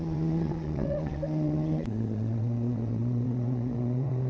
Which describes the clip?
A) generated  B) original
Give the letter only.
A